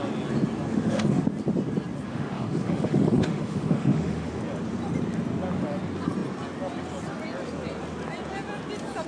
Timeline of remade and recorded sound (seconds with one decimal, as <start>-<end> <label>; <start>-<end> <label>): 0.0-0.7 recorded; 0.7-1.2 remade; 1.2-2.1 recorded; 2.1-4.4 remade; 4.4-9.1 recorded